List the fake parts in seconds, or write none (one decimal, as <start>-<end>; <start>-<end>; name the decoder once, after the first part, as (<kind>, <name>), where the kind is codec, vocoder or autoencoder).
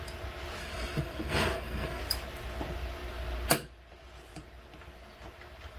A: 0.6-2.0 (codec, SNAC)